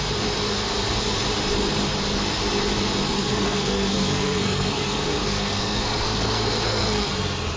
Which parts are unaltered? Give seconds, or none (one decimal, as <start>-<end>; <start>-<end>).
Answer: 0.0-3.1; 7.1-7.6